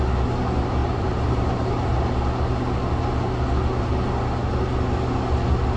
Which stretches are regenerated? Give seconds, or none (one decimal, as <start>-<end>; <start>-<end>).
0.8-2.0